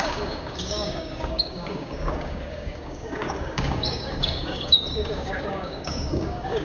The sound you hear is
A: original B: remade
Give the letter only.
B